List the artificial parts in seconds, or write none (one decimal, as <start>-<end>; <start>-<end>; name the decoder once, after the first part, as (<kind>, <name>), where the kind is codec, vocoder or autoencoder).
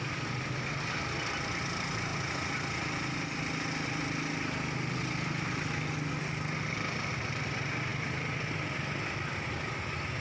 none